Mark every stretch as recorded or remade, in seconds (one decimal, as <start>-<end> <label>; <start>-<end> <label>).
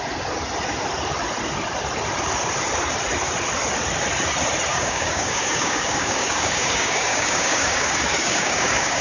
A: 0.0-4.7 recorded; 4.7-9.0 remade